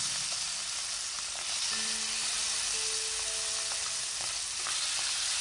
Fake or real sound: real